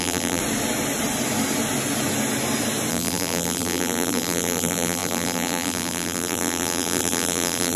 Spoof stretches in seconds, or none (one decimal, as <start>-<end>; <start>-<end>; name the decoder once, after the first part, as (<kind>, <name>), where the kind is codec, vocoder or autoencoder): 0.0-0.4 (vocoder, BigVGAN v2); 2.9-7.8